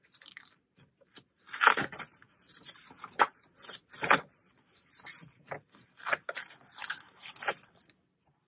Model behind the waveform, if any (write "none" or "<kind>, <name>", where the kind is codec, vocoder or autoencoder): vocoder, BigVGAN v2